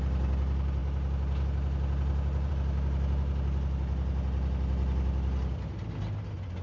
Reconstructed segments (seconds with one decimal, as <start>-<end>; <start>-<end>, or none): none